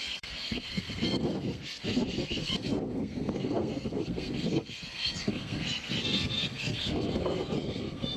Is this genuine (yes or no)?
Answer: no